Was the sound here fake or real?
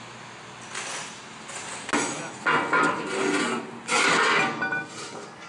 real